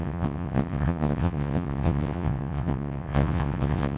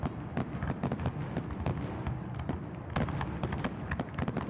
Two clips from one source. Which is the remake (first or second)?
first